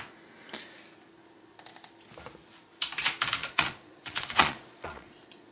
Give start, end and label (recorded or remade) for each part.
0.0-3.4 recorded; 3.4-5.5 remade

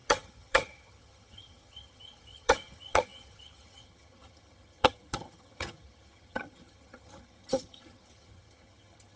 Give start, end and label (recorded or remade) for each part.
0.0-9.2 remade